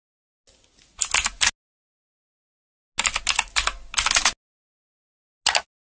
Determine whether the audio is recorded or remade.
recorded